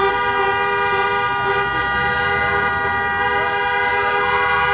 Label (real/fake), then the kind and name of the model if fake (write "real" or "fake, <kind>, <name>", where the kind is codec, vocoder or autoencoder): real